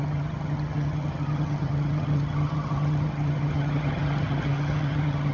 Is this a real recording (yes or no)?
no